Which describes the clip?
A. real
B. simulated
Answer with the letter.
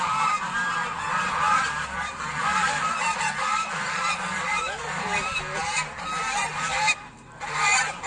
B